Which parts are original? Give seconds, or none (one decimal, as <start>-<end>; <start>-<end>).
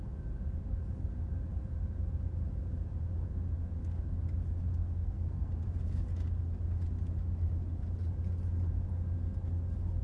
0.0-4.8; 5.5-10.0